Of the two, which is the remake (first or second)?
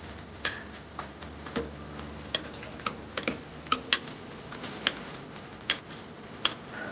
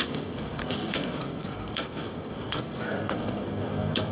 second